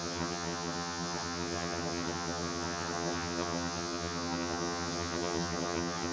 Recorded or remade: remade